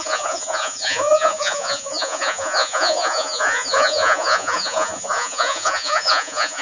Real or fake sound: fake